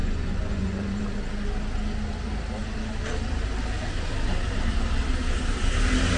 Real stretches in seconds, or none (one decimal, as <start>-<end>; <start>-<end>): 1.0-6.2